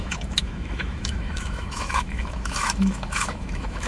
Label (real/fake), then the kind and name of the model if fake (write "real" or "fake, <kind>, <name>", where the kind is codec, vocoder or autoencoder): fake, autoencoder, DAC-VAE